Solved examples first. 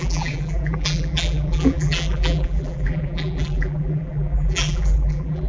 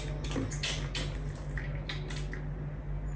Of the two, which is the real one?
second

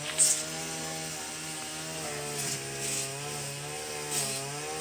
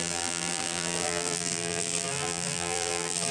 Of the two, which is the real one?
first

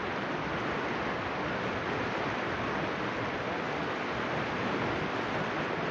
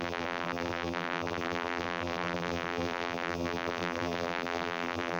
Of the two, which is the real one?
first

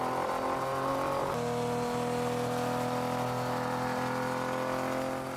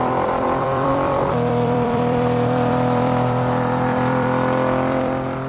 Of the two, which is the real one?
first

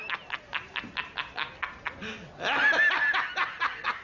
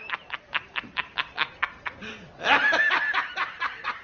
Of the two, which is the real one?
first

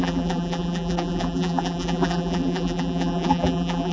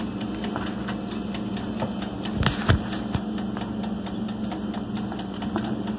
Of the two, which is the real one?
second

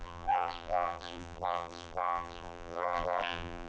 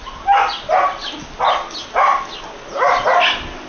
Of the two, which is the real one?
second